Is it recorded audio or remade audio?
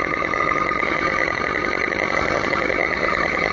remade